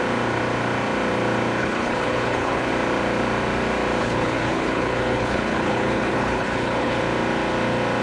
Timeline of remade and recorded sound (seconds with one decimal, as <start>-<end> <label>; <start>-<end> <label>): 0.0-1.6 recorded; 1.6-2.7 remade; 2.7-4.0 recorded; 4.0-7.0 remade; 7.0-8.0 recorded